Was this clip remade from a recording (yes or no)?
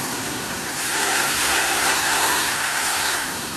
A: yes